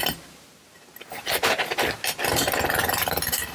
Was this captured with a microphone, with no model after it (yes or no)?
yes